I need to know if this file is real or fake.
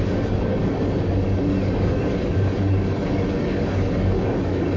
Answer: fake